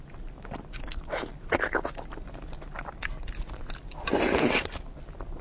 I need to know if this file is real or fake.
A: fake